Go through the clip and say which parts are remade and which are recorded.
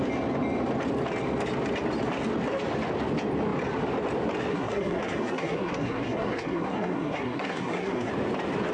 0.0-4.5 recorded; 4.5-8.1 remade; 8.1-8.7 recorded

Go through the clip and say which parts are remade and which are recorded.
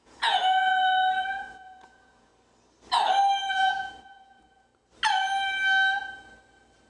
0.0-2.3 remade; 2.3-3.5 recorded; 3.5-4.7 remade; 4.7-6.9 recorded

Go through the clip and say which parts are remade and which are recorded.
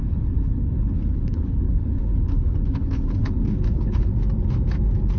0.0-4.1 remade; 4.1-5.2 recorded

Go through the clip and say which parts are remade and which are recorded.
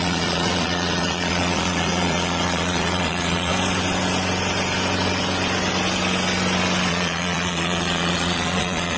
0.0-3.5 remade; 3.5-6.9 recorded; 6.9-9.0 remade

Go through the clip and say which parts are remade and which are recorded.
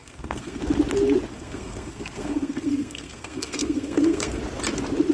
0.0-0.6 remade; 0.6-1.3 recorded; 1.3-4.4 remade; 4.4-5.1 recorded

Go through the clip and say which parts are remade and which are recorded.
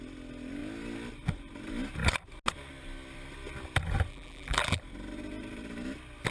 0.0-4.1 recorded; 4.1-4.8 remade; 4.8-6.3 recorded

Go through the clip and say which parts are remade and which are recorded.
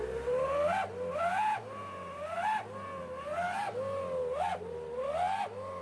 0.0-5.8 recorded